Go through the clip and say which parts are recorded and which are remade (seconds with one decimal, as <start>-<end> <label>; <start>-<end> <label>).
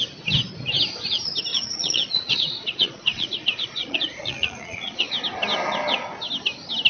0.0-1.5 recorded; 1.5-5.1 remade; 5.1-6.9 recorded